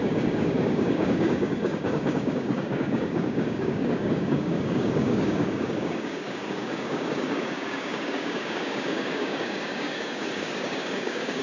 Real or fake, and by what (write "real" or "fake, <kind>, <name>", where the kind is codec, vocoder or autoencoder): fake, codec, DAC